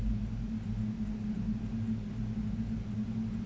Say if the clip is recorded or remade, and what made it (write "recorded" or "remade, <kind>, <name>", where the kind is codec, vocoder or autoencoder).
recorded